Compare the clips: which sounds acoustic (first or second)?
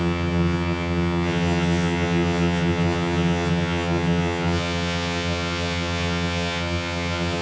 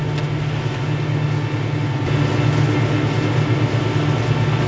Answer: second